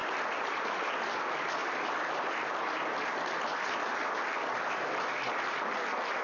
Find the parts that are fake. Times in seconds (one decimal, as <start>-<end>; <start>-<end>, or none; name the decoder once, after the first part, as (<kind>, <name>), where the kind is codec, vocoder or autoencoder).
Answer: none